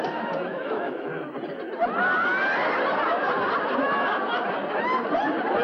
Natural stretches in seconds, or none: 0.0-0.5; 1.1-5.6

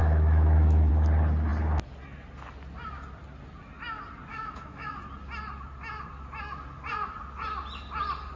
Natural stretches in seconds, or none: 0.9-4.3; 4.9-8.4

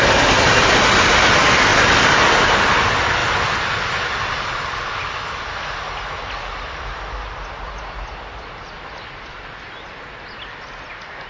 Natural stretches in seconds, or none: 0.0-11.3

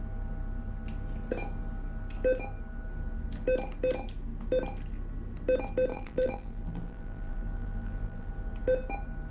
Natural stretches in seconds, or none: 0.0-5.9; 8.3-9.3

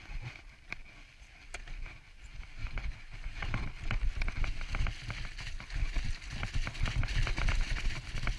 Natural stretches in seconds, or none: 0.0-2.6; 3.5-8.4

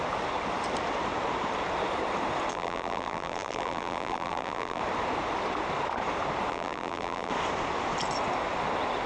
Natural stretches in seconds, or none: 0.0-2.5; 4.8-6.5; 7.3-9.1

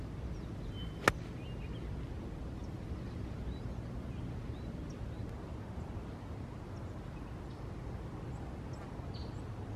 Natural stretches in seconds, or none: 0.0-9.8

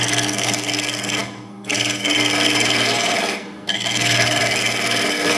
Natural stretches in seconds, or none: none